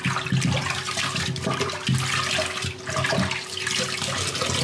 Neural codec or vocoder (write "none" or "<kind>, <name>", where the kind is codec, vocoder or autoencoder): none